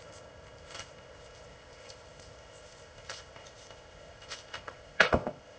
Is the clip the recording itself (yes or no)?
no